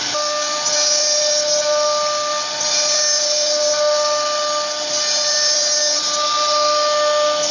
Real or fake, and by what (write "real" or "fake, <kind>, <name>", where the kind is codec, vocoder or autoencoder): real